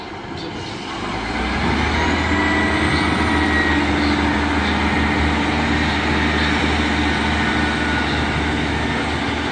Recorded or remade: recorded